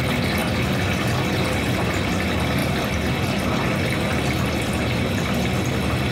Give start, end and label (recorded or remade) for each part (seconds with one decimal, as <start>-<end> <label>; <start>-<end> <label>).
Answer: 0.0-6.1 recorded